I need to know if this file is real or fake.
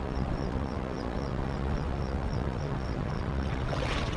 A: fake